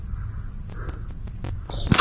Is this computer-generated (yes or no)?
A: no